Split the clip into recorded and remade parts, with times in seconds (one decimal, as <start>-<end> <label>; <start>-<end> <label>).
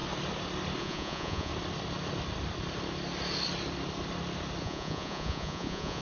0.0-0.8 recorded; 0.8-1.5 remade; 1.5-4.6 recorded; 4.6-6.0 remade